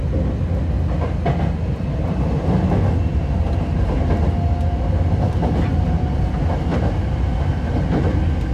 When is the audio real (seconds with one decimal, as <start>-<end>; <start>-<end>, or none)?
0.0-8.5